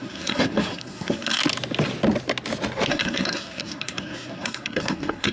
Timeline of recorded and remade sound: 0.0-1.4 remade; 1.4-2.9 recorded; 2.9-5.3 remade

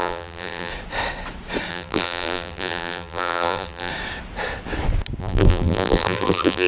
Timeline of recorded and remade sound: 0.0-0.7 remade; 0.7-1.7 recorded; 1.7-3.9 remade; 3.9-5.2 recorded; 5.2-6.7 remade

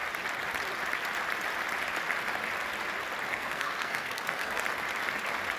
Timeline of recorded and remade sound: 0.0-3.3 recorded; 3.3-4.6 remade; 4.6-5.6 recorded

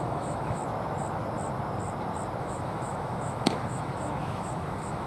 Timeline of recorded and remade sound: 0.0-0.6 remade; 0.6-2.4 recorded; 2.4-5.1 remade